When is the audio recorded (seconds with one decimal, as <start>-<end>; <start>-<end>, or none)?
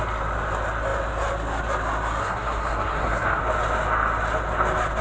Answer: 0.0-2.2; 3.4-5.0